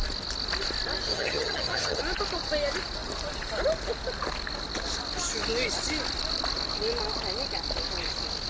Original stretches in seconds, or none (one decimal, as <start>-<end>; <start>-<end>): 0.0-1.1; 2.0-8.5